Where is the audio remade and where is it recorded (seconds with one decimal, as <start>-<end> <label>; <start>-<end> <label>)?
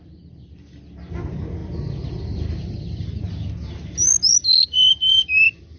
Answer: 0.0-5.8 recorded